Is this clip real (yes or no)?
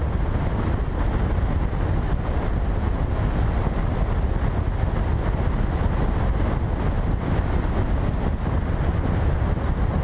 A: yes